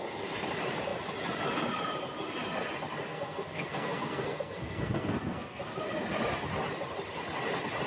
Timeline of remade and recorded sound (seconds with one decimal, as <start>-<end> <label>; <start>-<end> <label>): 0.0-3.1 recorded; 3.1-5.6 remade; 5.6-7.9 recorded